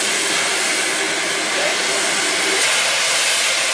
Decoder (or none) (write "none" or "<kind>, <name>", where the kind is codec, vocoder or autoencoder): none